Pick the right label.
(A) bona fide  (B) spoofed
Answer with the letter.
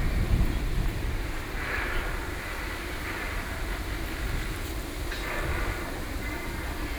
B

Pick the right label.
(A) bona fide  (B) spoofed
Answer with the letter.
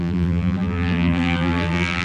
B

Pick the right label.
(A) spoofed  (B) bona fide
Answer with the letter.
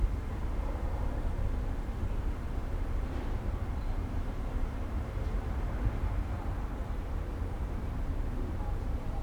A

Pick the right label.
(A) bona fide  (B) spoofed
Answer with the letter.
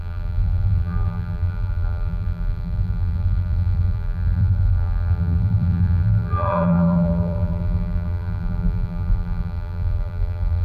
B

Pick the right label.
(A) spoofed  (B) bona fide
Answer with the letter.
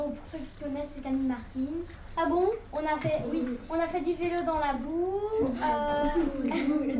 B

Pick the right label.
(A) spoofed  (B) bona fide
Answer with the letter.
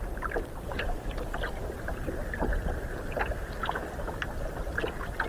A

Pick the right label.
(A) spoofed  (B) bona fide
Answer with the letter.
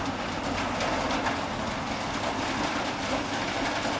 B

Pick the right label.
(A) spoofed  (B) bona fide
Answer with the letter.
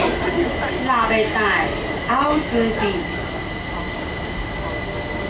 B